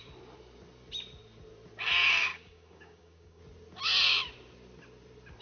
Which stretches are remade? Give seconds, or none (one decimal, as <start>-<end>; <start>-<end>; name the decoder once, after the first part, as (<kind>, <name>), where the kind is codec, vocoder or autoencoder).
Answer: 2.3-3.4 (codec, DAC)